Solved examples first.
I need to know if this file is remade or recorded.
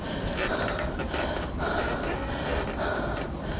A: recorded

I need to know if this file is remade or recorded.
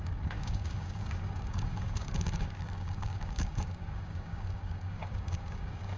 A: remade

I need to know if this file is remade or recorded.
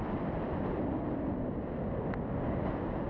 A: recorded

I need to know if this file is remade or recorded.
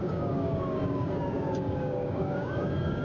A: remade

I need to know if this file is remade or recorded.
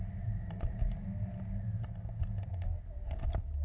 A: recorded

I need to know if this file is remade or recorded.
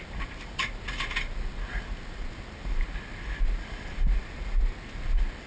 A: recorded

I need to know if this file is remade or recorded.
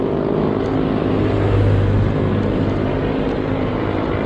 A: recorded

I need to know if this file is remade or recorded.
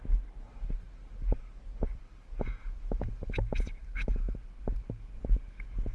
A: recorded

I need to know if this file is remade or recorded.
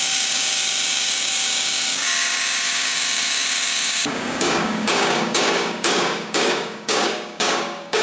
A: remade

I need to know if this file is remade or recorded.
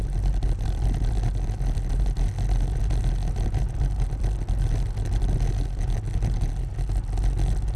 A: recorded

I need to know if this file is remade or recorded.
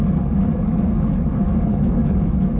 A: remade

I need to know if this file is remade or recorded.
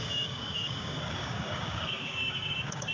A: remade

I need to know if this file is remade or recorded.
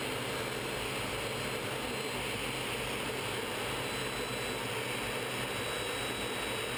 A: recorded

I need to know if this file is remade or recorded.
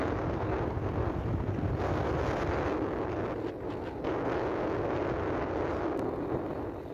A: recorded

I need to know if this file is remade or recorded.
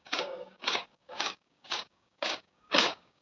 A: remade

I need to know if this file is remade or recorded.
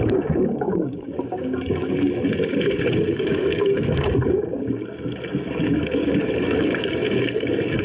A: remade